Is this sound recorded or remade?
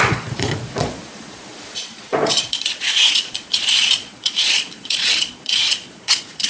remade